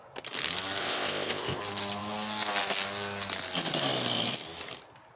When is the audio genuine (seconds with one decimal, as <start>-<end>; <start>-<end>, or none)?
0.0-0.8; 1.6-5.2